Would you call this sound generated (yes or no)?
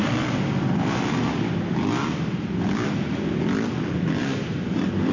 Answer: no